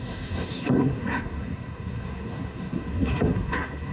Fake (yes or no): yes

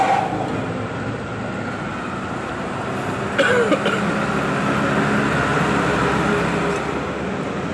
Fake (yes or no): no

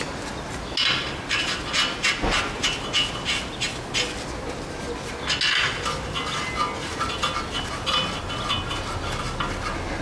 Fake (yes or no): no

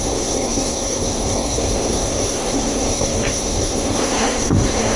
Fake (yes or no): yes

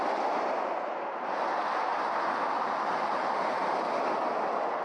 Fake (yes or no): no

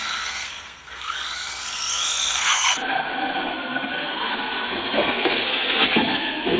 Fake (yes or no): yes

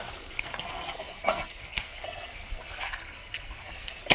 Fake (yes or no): yes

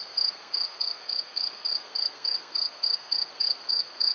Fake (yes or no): yes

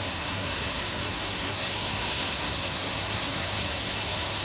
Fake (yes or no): yes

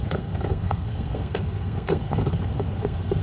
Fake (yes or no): yes